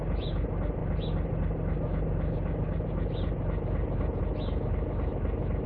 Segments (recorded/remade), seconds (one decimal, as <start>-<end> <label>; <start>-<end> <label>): 0.0-5.7 recorded